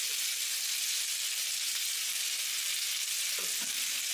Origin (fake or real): real